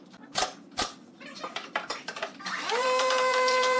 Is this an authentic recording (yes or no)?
no